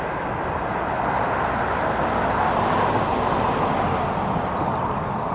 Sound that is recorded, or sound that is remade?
recorded